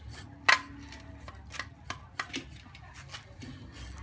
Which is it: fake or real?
real